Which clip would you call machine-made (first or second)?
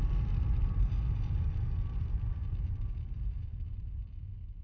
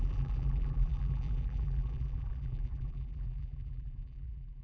second